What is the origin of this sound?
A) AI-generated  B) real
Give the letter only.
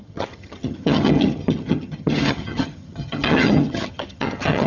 A